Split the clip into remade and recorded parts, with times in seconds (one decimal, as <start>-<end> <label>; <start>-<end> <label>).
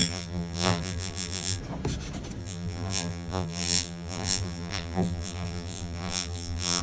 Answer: 0.0-1.6 remade; 1.6-2.4 recorded; 2.4-6.8 remade